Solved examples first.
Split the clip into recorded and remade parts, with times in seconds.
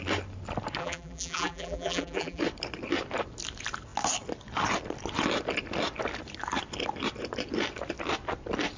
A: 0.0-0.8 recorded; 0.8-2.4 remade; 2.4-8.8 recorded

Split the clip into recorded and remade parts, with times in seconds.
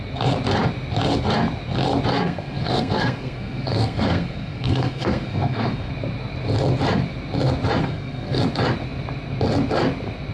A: 0.0-2.1 recorded; 2.1-5.9 remade; 5.9-7.8 recorded; 7.8-8.4 remade; 8.4-10.3 recorded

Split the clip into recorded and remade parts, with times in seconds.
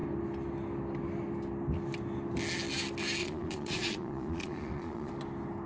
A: 0.0-3.2 recorded; 3.2-5.1 remade; 5.1-5.7 recorded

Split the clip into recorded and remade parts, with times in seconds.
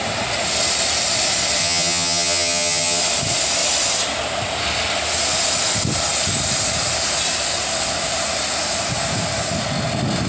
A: 0.0-1.6 recorded; 1.6-3.0 remade; 3.0-10.3 recorded